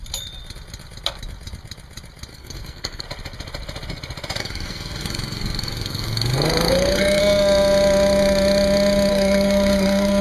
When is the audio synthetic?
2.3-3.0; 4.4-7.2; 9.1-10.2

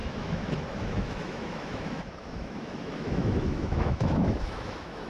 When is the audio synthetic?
0.0-5.1

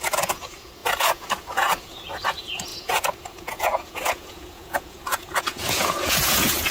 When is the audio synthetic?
0.0-6.7

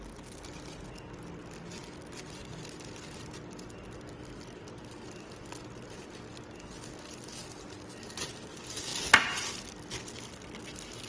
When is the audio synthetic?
none

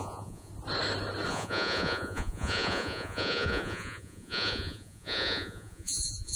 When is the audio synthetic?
0.0-0.5; 1.3-6.4